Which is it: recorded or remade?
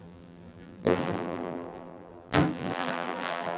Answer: remade